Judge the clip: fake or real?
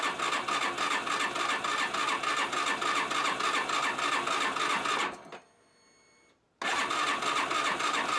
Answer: real